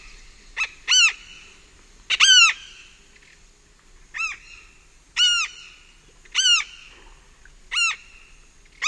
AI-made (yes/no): no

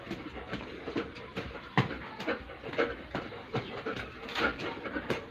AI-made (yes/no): yes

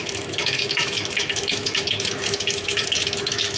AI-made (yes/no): yes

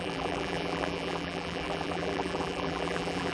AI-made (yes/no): yes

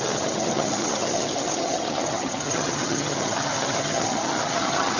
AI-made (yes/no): yes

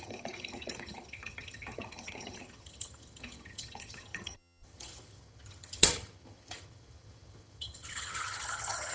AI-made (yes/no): yes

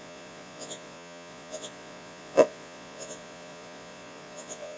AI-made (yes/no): yes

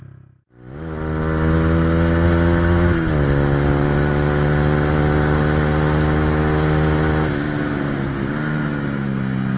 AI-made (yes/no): no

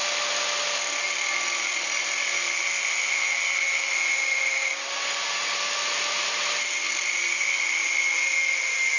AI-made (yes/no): no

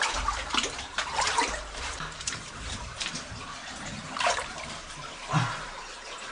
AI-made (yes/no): yes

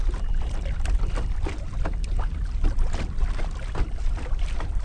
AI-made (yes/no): yes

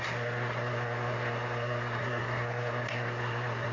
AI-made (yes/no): yes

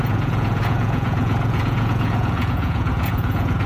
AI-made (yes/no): yes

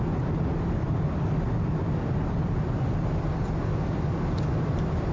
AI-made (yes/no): no